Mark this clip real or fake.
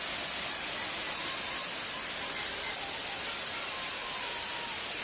real